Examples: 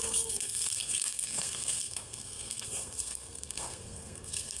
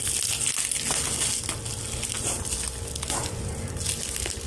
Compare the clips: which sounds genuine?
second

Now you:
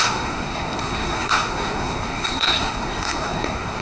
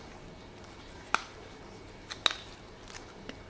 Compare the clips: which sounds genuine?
second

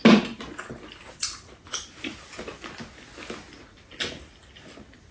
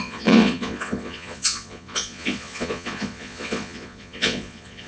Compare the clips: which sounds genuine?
first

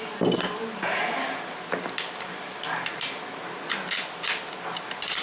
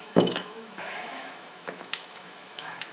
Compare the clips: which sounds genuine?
first